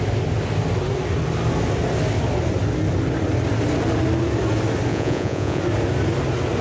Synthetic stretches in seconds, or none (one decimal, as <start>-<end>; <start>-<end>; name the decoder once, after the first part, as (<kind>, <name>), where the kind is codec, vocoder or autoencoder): 4.9-5.6 (vocoder, Vocos)